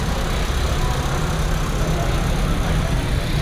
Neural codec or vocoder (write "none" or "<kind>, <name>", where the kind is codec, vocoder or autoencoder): none